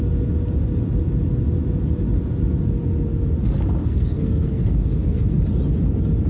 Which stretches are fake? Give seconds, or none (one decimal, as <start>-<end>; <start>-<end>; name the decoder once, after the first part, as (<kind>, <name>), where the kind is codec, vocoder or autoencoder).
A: 3.8-5.4 (codec, SNAC)